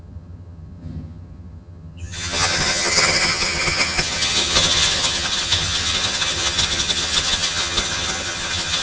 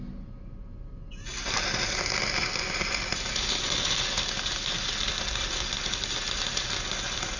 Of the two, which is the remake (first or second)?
first